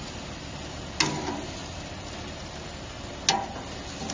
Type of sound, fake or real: real